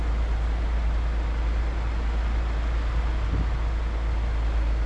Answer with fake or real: real